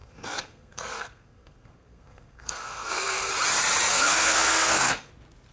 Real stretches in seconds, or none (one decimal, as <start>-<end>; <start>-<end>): 3.3-3.9; 5.1-5.5